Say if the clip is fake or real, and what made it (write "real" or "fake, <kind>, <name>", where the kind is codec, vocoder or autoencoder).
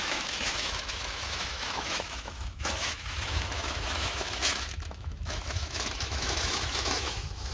fake, autoencoder, DAC-VAE